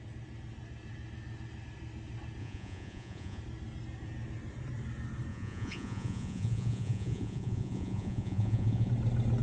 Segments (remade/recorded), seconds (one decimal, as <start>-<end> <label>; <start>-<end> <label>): 0.0-2.4 recorded; 2.4-3.4 remade; 3.4-5.3 recorded; 5.3-8.9 remade; 8.9-9.4 recorded